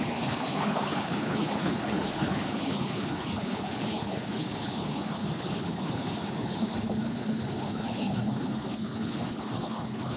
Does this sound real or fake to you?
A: fake